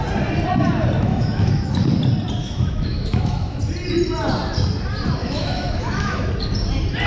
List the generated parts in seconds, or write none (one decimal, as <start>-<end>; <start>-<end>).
1.1-1.8; 2.4-3.6; 5.2-6.3